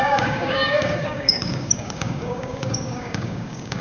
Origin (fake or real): fake